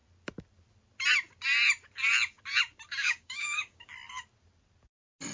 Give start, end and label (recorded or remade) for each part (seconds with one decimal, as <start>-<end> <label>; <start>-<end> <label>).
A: 0.0-3.0 recorded; 3.0-3.9 remade; 3.9-5.3 recorded